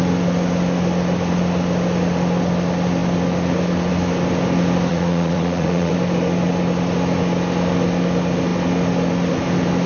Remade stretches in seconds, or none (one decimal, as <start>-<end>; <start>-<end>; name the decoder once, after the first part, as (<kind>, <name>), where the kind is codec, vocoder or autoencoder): 4.9-5.9 (vocoder, Vocos)